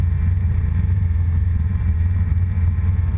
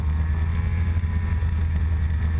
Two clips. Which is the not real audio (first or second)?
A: first